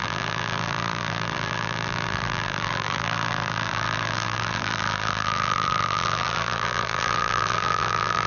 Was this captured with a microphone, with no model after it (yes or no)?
no